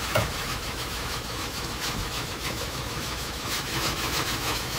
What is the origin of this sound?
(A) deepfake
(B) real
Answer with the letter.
A